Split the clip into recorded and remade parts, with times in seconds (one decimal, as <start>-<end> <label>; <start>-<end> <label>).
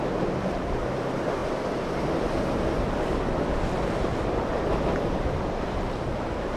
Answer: 0.0-1.4 remade; 1.4-5.4 recorded; 5.4-6.6 remade